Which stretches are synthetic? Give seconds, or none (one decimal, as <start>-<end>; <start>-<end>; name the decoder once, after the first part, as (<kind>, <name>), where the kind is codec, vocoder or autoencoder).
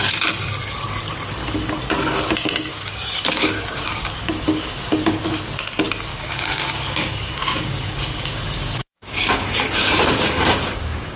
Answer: 2.7-5.2 (codec, DAC); 6.1-11.2